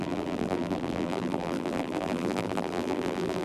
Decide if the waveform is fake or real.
fake